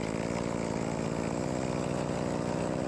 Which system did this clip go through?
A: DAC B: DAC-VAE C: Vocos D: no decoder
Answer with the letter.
D